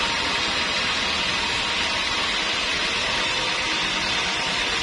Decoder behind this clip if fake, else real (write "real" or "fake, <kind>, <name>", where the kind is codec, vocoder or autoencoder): real